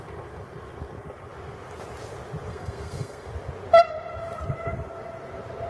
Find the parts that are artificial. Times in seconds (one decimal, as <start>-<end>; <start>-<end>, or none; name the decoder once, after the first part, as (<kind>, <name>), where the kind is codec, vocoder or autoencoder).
2.5-3.3 (codec, SNAC)